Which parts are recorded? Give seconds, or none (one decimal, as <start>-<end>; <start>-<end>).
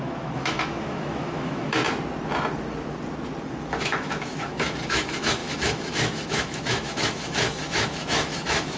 1.8-3.7